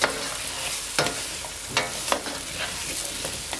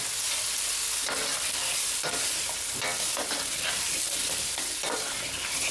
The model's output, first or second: second